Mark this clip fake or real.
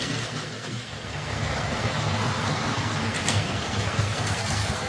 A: fake